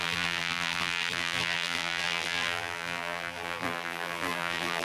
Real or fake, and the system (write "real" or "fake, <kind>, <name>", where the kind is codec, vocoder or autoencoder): fake, vocoder, BigVGAN v2